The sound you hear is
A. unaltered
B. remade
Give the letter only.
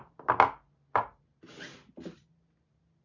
A